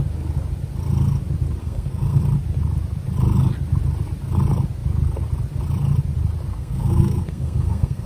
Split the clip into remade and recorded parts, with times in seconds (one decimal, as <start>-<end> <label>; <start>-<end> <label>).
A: 0.0-1.6 recorded; 1.6-2.2 remade; 2.2-6.5 recorded; 6.5-8.1 remade